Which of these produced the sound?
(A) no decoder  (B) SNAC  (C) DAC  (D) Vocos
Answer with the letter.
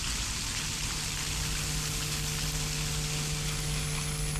A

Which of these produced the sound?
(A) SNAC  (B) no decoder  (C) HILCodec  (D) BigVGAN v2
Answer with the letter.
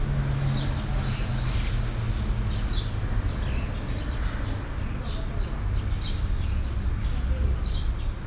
B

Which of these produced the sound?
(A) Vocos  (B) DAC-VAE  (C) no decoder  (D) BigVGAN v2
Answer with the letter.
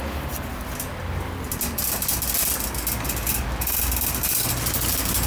C